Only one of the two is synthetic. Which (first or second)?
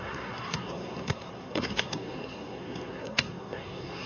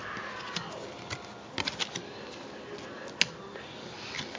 first